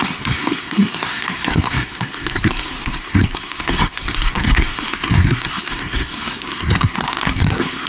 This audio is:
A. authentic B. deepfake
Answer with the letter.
B